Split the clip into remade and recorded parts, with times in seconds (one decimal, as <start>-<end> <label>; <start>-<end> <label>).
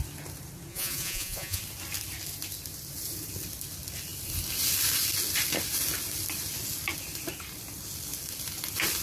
0.0-0.7 recorded; 0.7-1.6 remade; 1.6-9.0 recorded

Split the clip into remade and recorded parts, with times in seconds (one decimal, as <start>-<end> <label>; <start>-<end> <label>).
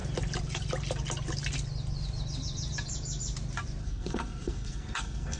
0.0-3.8 recorded; 3.8-5.4 remade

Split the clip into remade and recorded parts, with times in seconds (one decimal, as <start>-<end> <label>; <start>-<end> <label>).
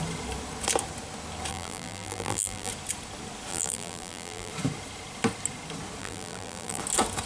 0.0-1.5 recorded; 1.5-2.7 remade; 2.7-3.5 recorded; 3.5-4.5 remade; 4.5-6.0 recorded; 6.0-6.8 remade; 6.8-7.2 recorded